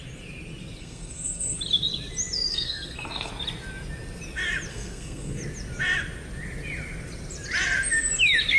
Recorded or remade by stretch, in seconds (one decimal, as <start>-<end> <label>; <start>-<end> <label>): 0.0-0.8 recorded; 0.8-1.6 remade; 1.6-2.5 recorded; 2.5-3.3 remade; 3.3-4.7 recorded; 4.7-5.4 remade; 5.4-8.6 recorded